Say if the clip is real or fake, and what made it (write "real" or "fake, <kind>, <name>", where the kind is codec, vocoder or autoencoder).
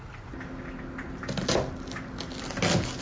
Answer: real